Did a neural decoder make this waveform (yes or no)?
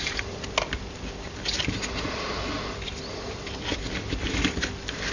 no